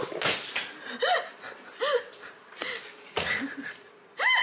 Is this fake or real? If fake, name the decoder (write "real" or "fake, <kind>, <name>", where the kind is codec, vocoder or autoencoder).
real